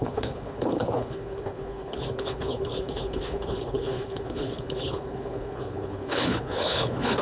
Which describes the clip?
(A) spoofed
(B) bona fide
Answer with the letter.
A